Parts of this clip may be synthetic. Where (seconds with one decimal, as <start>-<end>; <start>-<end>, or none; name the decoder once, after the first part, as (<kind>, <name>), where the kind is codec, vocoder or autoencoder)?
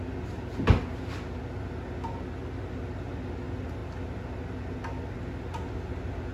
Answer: none